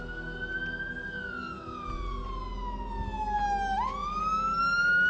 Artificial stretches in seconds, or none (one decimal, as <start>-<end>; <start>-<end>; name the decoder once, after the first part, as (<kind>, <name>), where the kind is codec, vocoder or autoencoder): none